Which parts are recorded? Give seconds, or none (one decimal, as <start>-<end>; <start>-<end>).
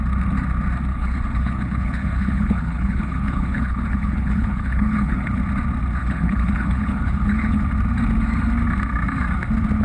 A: 0.0-0.9; 5.4-6.0; 7.6-9.8